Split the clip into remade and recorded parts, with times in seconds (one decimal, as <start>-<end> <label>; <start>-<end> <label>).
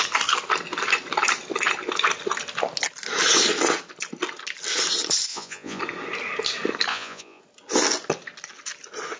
0.0-5.3 recorded; 5.3-5.8 remade; 5.8-6.9 recorded; 6.9-7.4 remade; 7.4-9.2 recorded